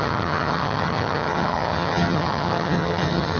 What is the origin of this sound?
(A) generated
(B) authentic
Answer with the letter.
A